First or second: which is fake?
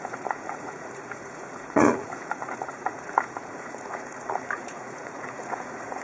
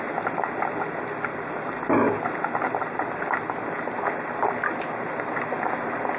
first